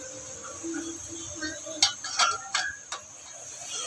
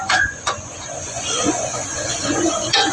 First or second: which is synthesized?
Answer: second